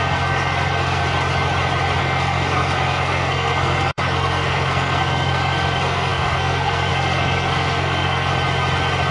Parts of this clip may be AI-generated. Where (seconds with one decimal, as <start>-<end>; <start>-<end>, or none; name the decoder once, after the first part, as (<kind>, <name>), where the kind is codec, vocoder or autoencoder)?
0.0-1.0 (codec, SNAC); 2.0-8.3